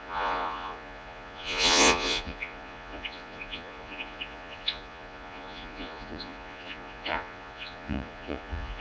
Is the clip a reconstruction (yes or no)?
yes